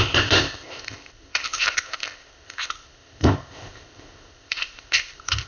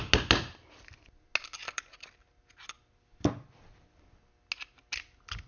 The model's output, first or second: first